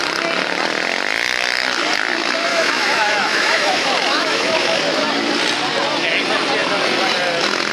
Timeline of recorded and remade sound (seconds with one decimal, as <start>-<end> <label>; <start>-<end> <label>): 0.0-2.5 recorded; 2.5-4.8 remade; 4.8-7.7 recorded